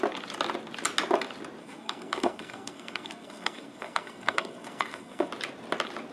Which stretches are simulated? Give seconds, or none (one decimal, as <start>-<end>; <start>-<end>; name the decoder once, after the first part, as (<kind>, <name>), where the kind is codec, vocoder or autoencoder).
1.6-5.3 (codec, SNAC)